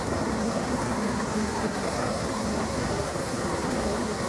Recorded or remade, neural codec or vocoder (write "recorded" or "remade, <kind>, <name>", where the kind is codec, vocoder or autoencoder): remade, codec, SNAC